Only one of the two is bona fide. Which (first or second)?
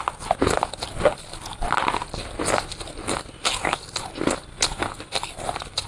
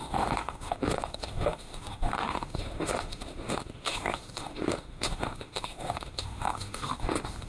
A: first